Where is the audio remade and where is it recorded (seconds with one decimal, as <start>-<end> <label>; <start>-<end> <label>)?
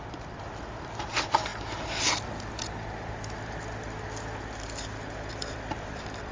0.0-1.5 remade; 1.5-5.3 recorded; 5.3-6.3 remade